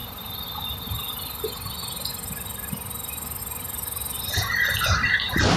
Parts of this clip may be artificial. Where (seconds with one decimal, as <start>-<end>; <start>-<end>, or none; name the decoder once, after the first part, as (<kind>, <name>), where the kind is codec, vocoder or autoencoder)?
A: none